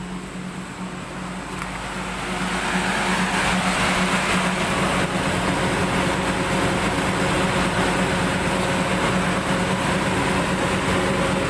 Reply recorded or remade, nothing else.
recorded